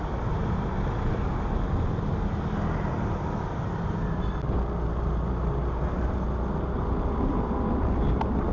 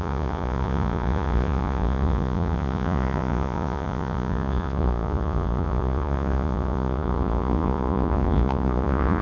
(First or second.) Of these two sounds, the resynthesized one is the second